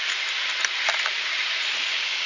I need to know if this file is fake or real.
fake